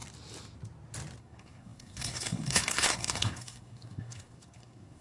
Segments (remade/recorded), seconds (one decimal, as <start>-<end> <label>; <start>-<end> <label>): 0.0-1.2 recorded; 1.2-5.0 remade